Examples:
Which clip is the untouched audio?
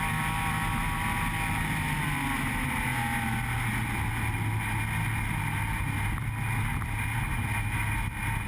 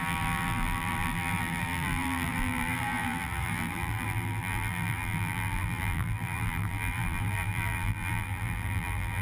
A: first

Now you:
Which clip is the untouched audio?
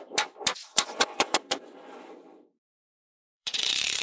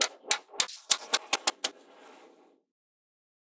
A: second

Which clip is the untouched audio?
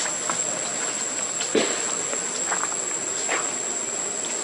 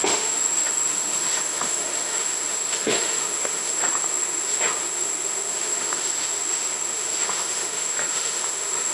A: first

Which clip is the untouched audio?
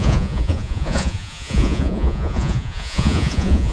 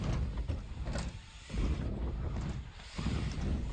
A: second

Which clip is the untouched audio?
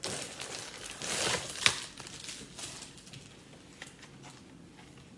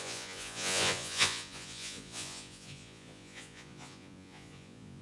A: first